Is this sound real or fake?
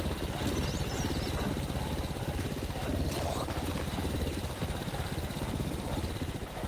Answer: real